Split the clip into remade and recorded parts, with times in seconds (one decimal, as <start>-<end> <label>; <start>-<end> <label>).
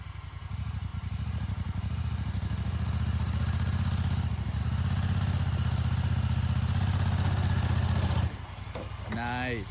0.0-9.7 recorded